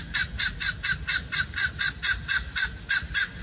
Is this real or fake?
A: real